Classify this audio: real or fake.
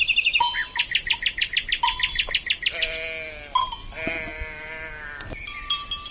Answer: real